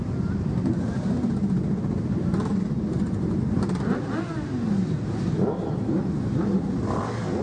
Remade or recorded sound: recorded